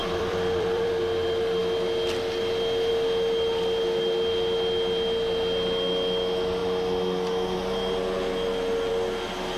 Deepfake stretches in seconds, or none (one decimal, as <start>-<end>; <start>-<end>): 0.0-0.9